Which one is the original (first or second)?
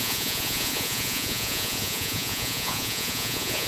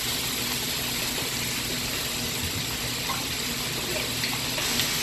second